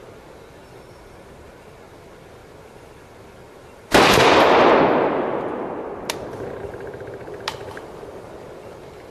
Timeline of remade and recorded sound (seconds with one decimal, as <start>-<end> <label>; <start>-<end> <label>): 0.0-9.1 recorded